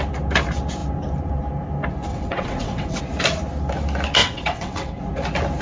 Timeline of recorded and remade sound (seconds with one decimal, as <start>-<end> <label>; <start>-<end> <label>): 0.0-2.1 recorded; 2.1-3.0 remade; 3.0-4.2 recorded; 4.2-5.0 remade; 5.0-5.6 recorded